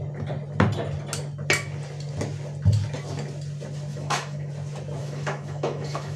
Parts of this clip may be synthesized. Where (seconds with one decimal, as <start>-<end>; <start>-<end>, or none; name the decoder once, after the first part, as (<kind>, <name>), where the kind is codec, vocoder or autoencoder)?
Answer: 3.9-4.5 (autoencoder, DAC-VAE); 5.0-6.2